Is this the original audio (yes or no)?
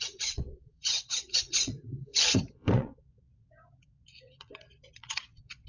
no